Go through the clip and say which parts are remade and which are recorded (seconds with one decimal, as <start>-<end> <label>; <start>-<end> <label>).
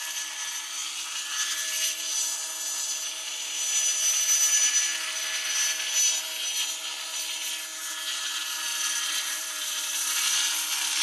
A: 0.0-8.7 recorded; 8.7-10.6 remade; 10.6-11.0 recorded